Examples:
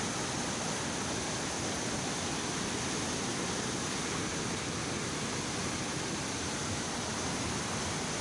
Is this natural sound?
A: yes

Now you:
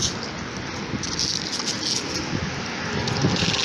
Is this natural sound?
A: yes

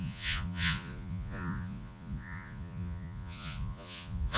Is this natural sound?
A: no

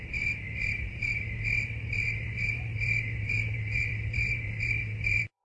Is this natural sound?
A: no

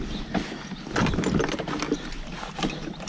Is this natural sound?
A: yes